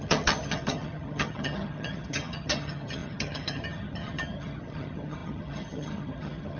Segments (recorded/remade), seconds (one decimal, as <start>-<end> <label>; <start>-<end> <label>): 0.0-6.6 remade

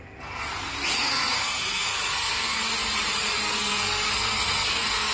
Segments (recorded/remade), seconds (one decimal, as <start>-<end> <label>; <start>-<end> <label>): 0.0-0.5 remade; 0.5-1.1 recorded; 1.1-2.6 remade; 2.6-3.4 recorded; 3.4-5.1 remade

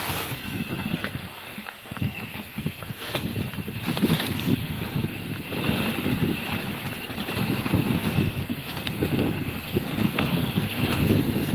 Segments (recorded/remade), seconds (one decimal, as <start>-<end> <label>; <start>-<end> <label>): 0.0-3.3 remade; 3.3-4.2 recorded; 4.2-5.2 remade; 5.2-7.4 recorded; 7.4-11.5 remade

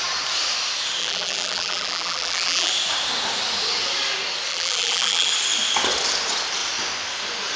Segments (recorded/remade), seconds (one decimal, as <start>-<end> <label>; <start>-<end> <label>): 0.0-1.0 recorded; 1.0-2.7 remade; 2.7-4.5 recorded; 4.5-5.3 remade; 5.3-7.6 recorded